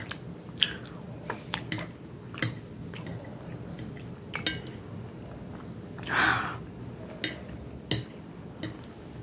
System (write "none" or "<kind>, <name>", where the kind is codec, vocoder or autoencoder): none